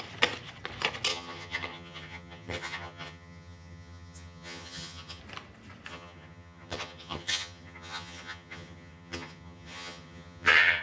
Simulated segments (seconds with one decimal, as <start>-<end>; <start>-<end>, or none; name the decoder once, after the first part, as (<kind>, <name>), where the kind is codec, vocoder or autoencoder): 1.1-5.2 (vocoder, HiFi-GAN); 5.9-10.8